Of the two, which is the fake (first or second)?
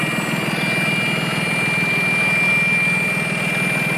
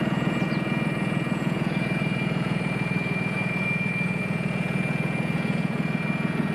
second